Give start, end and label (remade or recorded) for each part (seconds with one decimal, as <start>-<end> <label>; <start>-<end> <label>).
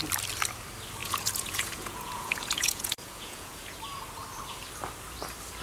0.0-1.0 recorded; 1.0-3.8 remade; 3.8-5.6 recorded